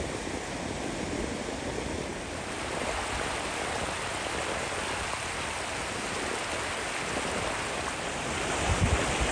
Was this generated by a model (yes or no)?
no